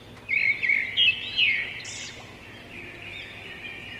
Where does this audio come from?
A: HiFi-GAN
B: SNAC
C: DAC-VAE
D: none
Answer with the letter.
D